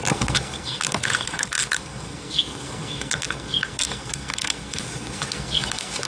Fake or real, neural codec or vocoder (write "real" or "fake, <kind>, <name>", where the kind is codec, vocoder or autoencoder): fake, codec, SNAC